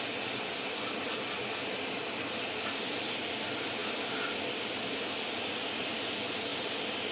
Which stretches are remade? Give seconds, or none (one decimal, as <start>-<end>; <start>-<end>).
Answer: none